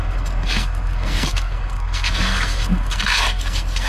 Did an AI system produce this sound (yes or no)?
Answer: yes